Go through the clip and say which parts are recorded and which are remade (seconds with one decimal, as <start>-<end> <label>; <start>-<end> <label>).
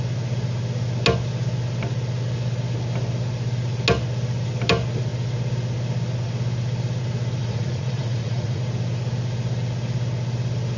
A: 0.0-7.4 recorded; 7.4-8.6 remade; 8.6-10.8 recorded